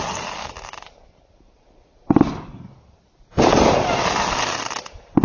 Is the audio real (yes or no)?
yes